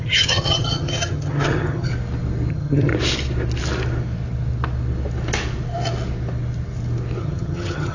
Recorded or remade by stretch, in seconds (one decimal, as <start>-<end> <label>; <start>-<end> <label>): 0.0-1.9 remade; 1.9-2.5 recorded; 2.5-2.9 remade; 2.9-7.2 recorded; 7.2-7.9 remade